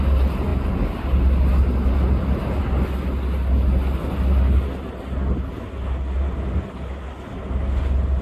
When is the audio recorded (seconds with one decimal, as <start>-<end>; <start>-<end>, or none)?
0.0-8.2